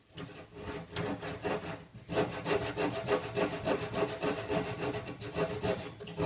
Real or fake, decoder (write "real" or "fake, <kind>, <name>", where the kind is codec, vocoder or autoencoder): real